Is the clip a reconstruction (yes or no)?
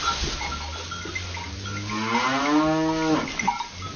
no